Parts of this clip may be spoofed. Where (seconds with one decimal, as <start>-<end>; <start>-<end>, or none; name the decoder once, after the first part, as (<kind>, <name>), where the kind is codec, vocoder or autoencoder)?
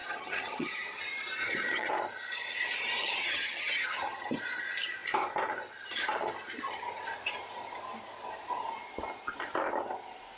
0.0-1.0 (vocoder, HiFi-GAN); 1.4-1.9; 3.0-4.3